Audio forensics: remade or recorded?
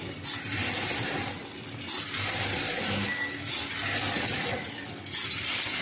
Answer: recorded